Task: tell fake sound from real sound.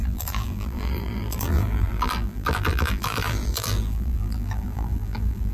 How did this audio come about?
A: fake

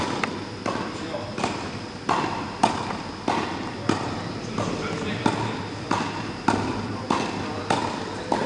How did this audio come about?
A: fake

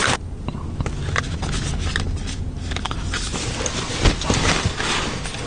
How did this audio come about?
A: real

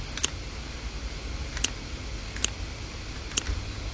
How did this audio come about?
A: real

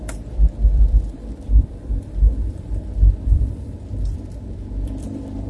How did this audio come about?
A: fake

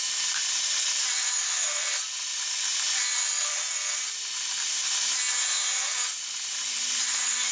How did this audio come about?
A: real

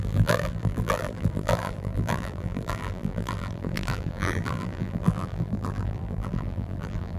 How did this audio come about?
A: fake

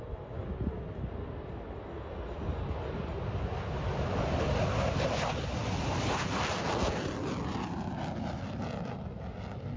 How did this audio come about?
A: real